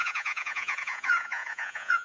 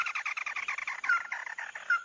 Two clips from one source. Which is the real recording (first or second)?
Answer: second